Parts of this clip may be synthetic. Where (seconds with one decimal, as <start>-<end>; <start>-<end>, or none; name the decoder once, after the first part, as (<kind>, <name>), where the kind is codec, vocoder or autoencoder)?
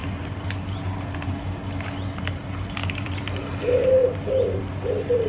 2.8-3.3 (vocoder, BigVGAN v2)